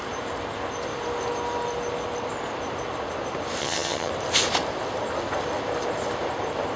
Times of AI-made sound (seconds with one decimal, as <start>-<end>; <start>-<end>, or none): 3.6-4.1